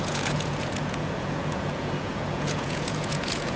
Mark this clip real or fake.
fake